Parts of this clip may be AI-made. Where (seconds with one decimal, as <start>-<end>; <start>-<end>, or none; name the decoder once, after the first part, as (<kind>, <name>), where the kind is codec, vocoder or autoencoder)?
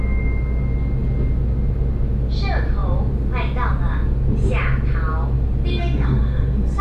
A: 5.7-6.8 (codec, SNAC)